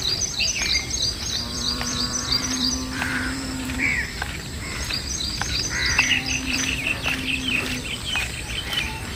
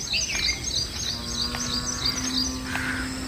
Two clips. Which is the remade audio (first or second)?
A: first